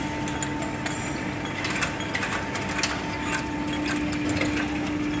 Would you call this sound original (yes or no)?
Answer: yes